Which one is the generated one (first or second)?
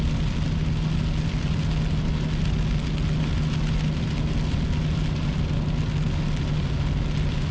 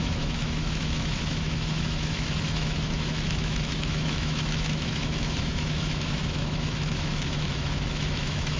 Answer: second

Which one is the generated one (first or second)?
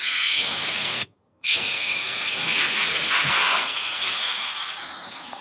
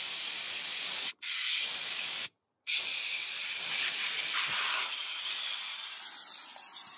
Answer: first